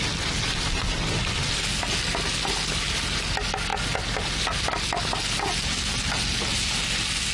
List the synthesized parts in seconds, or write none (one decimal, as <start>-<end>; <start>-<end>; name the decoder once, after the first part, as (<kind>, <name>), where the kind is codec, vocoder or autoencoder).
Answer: none